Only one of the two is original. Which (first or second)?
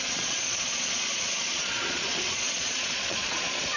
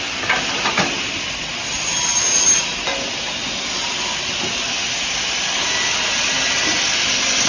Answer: second